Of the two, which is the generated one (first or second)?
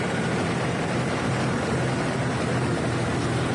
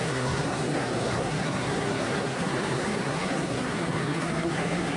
second